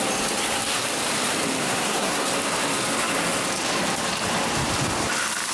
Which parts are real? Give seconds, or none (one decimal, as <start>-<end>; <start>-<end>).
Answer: 0.0-1.6; 2.3-5.5